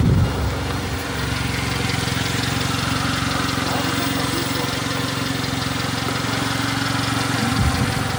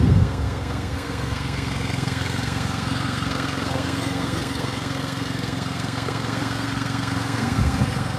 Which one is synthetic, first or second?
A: second